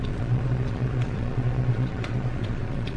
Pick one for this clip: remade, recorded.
remade